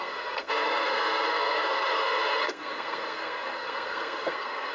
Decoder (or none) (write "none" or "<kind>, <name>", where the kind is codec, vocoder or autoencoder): codec, SNAC